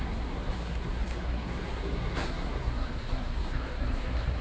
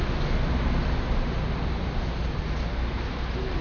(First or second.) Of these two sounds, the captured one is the second